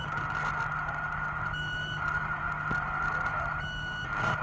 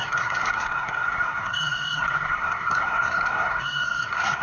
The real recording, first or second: first